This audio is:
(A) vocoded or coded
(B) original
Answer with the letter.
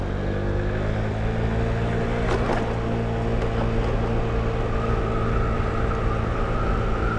B